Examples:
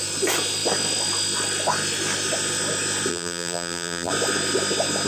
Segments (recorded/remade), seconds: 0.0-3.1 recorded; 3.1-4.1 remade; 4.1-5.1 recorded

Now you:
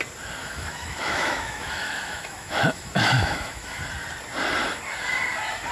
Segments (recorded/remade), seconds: 0.0-0.4 recorded; 0.4-3.8 remade; 3.8-5.7 recorded

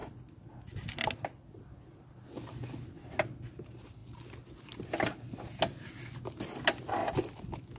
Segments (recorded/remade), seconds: 0.0-7.8 recorded

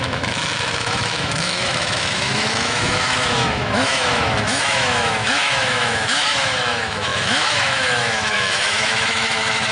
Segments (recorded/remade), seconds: 0.0-9.7 remade

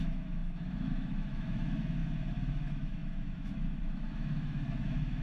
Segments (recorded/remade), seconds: 0.0-2.0 remade; 2.0-2.5 recorded; 2.5-5.2 remade

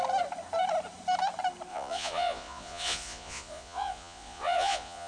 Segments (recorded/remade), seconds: 0.0-1.7 recorded; 1.7-5.1 remade